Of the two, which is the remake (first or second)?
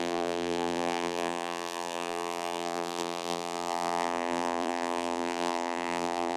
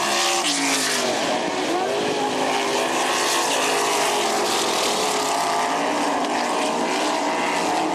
first